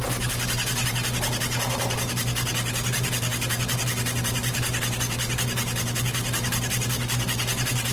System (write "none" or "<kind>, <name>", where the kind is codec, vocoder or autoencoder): none